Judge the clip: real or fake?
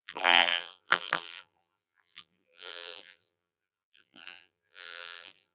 fake